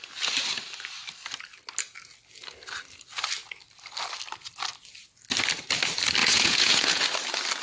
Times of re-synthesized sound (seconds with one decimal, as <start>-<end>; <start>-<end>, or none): 6.2-7.0